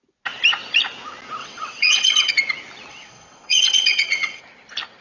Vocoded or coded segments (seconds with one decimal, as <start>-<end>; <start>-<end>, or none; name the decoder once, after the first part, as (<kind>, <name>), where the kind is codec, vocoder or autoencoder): 1.4-2.3 (vocoder, WaveNeXt); 2.9-4.4